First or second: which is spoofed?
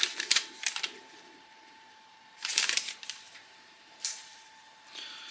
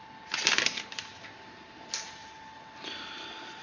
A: first